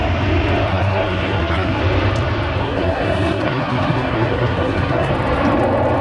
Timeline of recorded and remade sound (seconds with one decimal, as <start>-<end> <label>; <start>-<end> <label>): 0.0-0.7 recorded; 0.7-1.8 remade; 1.8-2.6 recorded; 2.6-5.1 remade; 5.1-6.0 recorded